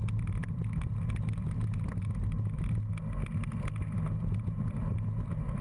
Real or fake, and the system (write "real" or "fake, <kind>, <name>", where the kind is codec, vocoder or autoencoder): real